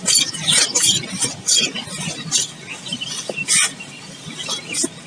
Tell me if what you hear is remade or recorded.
recorded